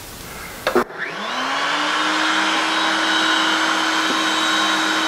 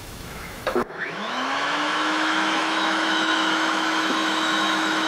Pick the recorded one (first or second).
first